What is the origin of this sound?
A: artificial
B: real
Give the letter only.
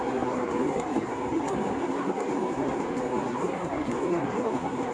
A